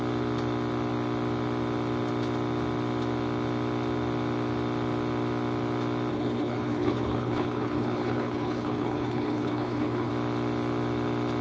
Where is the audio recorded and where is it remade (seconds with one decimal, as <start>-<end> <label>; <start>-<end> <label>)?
0.0-6.1 recorded; 6.1-10.1 remade; 10.1-11.4 recorded